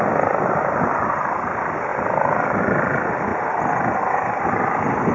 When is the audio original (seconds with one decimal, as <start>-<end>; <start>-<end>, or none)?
0.0-5.1